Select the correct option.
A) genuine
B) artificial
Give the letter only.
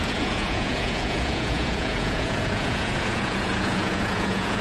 B